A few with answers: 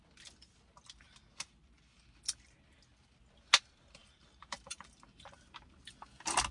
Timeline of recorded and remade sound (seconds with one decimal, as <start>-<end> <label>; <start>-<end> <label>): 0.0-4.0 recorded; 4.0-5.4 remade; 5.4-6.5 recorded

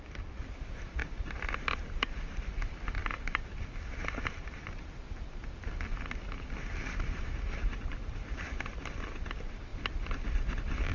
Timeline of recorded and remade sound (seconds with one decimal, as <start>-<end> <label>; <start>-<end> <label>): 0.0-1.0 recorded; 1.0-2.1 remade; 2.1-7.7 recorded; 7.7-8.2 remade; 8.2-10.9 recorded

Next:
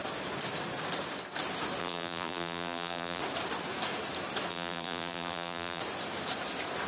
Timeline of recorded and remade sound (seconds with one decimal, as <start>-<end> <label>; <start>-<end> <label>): 0.0-1.8 recorded; 1.8-3.2 remade; 3.2-4.5 recorded; 4.5-5.8 remade; 5.8-6.9 recorded

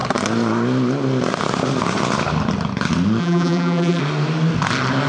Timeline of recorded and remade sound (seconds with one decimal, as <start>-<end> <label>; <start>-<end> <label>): 0.0-3.2 recorded; 3.2-4.0 remade; 4.0-5.1 recorded

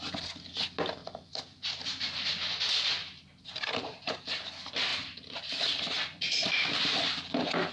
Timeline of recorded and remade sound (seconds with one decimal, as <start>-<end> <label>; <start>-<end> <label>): 0.0-1.0 recorded; 1.0-1.8 remade; 1.8-3.0 recorded; 3.0-4.4 remade; 4.4-4.9 recorded; 4.9-7.7 remade

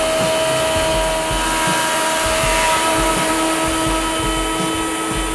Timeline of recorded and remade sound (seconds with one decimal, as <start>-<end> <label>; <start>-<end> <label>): 0.0-1.8 recorded; 1.8-3.3 remade; 3.3-5.3 recorded

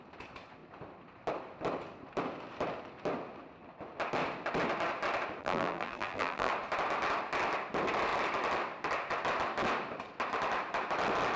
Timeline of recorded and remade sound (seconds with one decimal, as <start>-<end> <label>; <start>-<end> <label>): 0.0-5.4 recorded; 5.4-6.5 remade; 6.5-11.4 recorded

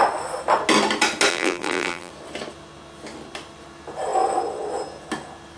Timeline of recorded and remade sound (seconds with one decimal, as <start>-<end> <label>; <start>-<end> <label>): 0.0-1.3 recorded; 1.3-2.1 remade; 2.1-5.6 recorded